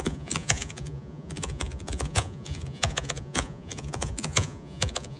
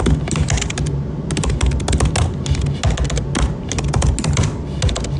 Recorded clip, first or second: second